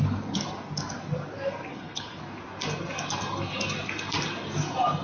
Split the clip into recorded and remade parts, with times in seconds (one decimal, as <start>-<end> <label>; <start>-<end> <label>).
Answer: 0.0-1.7 recorded; 1.7-2.2 remade; 2.2-5.0 recorded